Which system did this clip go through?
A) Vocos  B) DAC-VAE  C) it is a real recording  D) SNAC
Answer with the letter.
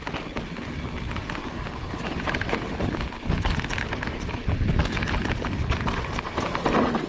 C